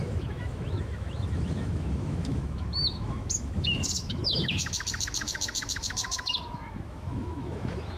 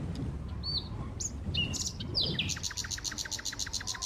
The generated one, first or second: first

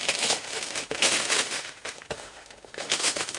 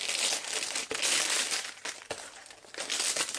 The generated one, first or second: first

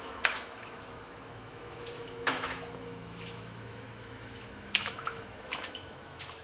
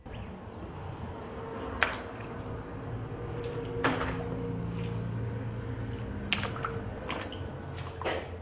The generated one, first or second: first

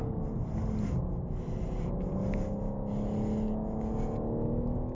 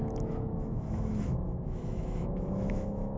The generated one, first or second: second